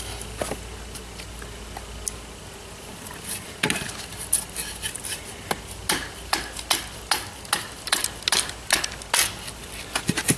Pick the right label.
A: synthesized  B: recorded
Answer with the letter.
B